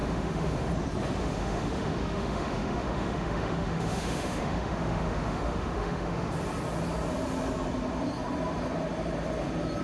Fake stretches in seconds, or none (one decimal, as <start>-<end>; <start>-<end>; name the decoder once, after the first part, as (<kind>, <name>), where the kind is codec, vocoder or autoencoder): 0.0-0.7 (autoencoder, DAC-VAE); 1.2-6.3